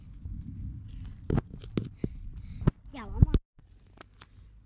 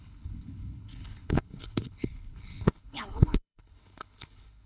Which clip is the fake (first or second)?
second